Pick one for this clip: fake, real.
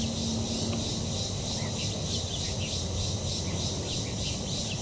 real